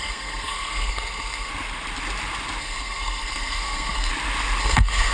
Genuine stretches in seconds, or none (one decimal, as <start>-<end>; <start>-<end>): 1.5-2.6; 4.1-4.6